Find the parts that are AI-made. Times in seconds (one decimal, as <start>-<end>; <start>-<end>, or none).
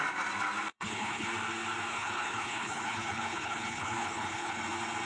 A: 0.7-1.3; 1.9-4.6